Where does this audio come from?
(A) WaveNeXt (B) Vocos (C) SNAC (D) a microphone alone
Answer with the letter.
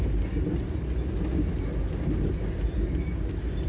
D